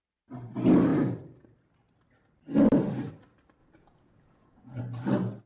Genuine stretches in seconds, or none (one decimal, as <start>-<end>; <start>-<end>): 0.0-3.6; 4.8-5.5